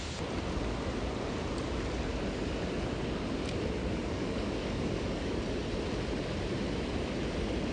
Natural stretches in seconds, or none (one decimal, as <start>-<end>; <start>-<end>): 0.0-3.8; 5.4-7.7